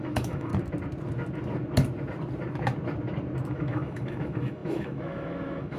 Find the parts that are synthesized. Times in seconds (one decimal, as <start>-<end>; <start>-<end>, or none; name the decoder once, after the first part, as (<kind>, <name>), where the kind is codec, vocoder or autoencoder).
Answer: 0.0-0.5 (autoencoder, DAC-VAE); 3.5-5.8